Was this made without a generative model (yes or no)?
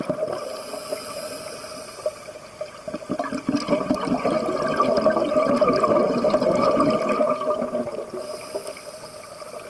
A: yes